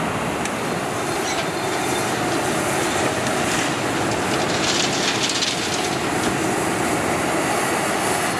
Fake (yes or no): no